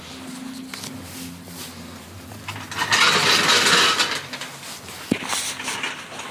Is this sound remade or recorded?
recorded